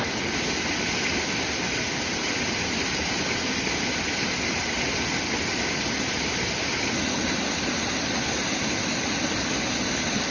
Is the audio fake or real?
real